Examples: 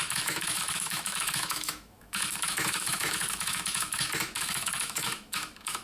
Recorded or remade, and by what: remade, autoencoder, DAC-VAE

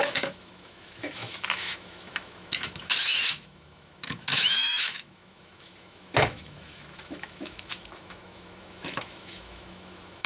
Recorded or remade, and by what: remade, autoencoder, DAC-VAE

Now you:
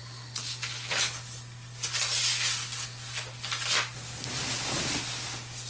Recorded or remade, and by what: recorded